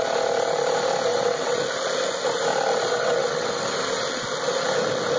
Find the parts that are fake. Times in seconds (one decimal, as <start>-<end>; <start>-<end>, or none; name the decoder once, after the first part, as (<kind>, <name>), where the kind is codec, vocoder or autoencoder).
1.1-1.6 (vocoder, WaveNeXt); 2.9-3.6